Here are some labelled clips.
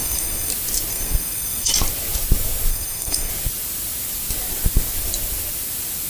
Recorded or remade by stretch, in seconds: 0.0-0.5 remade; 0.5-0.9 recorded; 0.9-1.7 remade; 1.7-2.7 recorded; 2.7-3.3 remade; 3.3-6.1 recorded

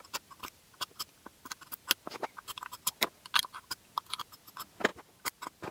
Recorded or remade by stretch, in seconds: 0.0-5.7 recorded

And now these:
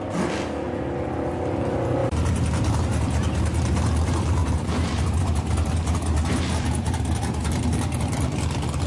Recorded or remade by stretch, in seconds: 0.0-4.4 recorded; 4.4-7.5 remade; 7.5-8.9 recorded

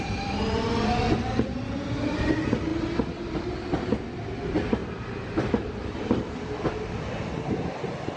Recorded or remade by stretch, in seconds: 0.0-4.8 recorded; 4.8-6.3 remade; 6.3-8.2 recorded

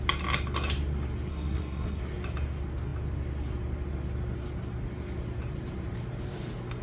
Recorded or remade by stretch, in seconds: 0.0-1.3 recorded; 1.3-2.0 remade; 2.0-6.8 recorded

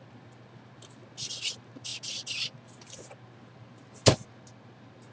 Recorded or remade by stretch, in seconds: 0.0-5.1 recorded